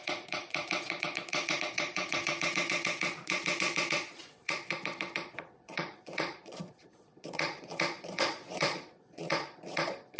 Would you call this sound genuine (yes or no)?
no